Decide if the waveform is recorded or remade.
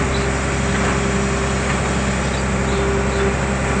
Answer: recorded